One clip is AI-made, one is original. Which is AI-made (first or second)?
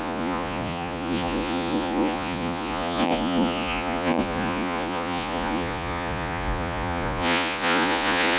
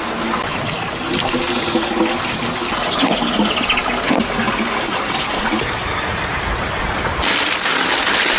first